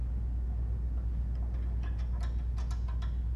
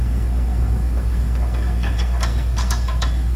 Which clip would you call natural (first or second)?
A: first